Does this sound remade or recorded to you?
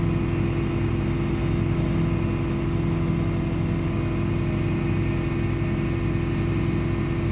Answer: recorded